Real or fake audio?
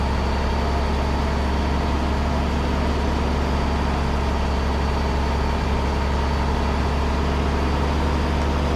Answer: real